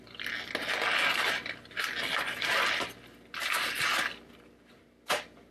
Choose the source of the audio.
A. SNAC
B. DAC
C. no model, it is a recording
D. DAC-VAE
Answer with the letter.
C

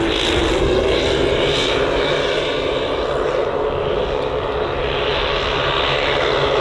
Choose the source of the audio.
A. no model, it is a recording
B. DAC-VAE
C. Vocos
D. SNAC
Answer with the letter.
A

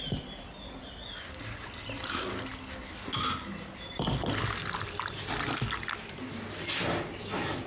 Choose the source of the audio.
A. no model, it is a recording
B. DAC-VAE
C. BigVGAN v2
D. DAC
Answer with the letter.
A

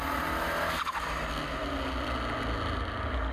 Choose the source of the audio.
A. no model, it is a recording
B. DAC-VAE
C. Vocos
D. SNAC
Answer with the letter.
A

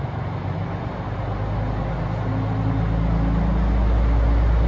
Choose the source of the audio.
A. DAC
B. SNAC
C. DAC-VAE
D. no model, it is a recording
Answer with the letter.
D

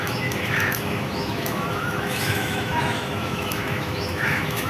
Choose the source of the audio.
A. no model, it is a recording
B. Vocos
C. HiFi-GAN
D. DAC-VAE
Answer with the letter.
D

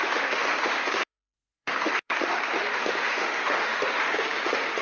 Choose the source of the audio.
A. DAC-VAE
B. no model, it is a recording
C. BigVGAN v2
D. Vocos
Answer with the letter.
A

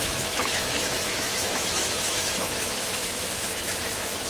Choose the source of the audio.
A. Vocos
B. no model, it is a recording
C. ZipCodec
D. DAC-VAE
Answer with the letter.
D